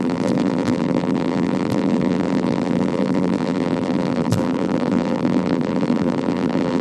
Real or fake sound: fake